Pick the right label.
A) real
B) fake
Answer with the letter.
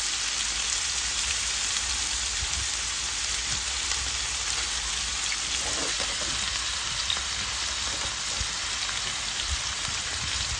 A